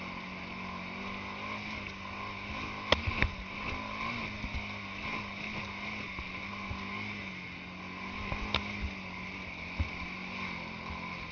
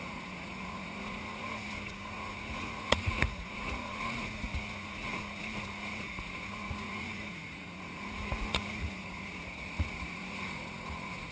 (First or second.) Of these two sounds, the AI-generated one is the second